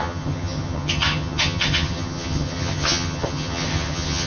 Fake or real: fake